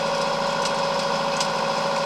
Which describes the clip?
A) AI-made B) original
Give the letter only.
B